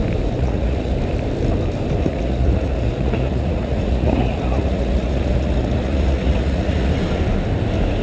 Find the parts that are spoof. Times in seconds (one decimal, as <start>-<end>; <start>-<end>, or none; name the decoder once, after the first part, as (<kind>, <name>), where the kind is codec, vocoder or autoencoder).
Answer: 0.4-0.9 (vocoder, Vocos); 2.1-6.9